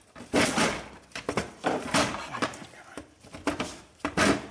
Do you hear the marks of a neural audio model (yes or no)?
no